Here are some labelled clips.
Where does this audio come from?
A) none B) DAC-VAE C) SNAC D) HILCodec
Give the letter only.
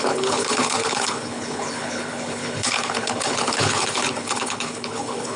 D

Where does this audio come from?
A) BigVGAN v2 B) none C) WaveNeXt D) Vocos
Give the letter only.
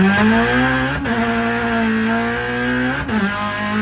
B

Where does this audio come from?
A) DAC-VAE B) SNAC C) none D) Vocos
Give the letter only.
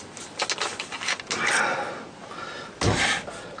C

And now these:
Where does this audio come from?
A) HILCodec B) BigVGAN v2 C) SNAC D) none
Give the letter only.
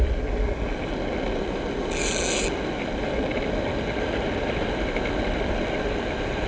D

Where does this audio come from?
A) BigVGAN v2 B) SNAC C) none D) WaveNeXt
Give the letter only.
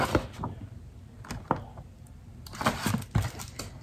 C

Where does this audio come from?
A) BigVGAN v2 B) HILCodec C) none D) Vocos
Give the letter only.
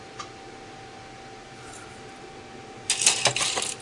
C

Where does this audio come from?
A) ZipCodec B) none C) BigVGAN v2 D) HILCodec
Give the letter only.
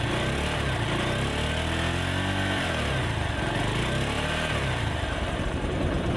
B